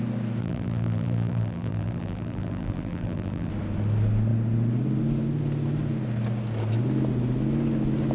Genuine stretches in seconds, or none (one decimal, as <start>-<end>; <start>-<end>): 0.0-0.4; 3.5-8.1